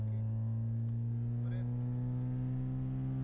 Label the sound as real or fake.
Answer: real